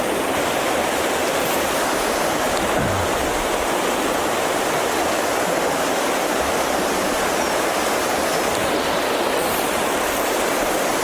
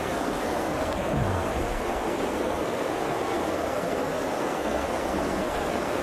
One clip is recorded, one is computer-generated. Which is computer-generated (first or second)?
second